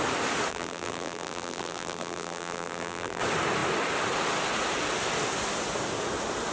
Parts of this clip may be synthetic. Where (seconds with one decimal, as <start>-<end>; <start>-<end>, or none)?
0.5-3.2